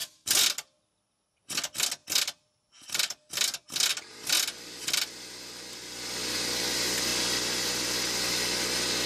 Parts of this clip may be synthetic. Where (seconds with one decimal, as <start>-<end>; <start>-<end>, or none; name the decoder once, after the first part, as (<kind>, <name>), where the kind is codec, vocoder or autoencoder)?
2.0-3.3 (vocoder, BigVGAN v2); 7.1-8.3

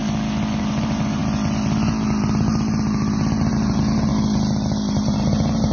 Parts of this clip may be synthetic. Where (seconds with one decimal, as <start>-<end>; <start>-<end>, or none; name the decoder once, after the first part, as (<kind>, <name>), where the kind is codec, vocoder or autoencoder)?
0.6-1.2 (vocoder, BigVGAN v2); 3.5-4.1; 4.9-5.7

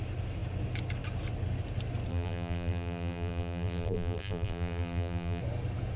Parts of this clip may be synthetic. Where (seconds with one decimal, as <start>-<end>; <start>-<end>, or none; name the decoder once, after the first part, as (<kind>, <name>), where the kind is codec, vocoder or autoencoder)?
2.1-5.4 (vocoder, BigVGAN v2)

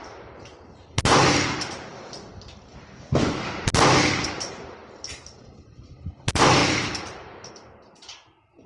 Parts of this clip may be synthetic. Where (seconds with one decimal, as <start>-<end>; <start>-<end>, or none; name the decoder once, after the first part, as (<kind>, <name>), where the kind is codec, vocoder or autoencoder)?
0.0-2.3 (vocoder, BigVGAN v2); 4.2-4.8; 5.4-8.7

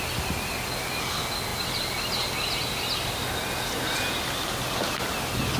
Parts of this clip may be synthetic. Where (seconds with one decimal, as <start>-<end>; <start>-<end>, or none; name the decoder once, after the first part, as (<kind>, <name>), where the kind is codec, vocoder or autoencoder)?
none

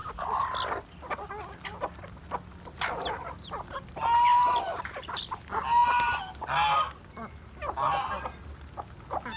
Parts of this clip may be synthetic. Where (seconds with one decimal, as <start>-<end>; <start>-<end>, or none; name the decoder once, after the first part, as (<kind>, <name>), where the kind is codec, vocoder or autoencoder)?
4.3-5.2 (vocoder, BigVGAN v2)

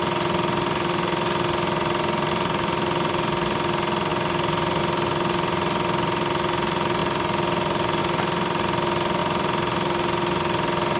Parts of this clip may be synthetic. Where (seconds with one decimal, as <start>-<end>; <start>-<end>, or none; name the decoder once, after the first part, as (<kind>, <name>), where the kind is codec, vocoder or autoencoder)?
none

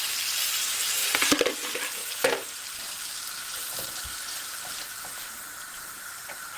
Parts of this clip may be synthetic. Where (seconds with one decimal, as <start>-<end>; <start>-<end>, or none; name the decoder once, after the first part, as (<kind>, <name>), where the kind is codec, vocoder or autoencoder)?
1.0-1.5 (vocoder, BigVGAN v2)